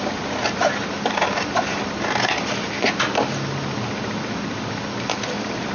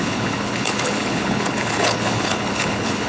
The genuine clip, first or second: first